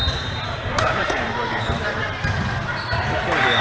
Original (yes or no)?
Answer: no